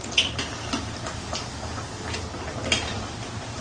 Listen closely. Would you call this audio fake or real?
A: fake